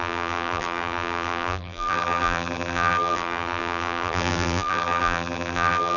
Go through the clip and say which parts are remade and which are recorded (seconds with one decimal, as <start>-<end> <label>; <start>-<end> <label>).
0.0-6.0 remade